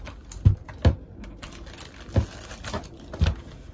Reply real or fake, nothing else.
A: real